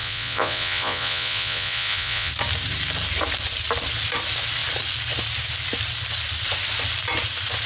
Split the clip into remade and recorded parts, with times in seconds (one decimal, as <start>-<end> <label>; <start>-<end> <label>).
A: 0.0-2.3 remade; 2.3-7.7 recorded